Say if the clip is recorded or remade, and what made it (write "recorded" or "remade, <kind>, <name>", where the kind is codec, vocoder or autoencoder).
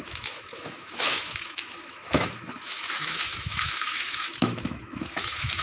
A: remade, autoencoder, DAC-VAE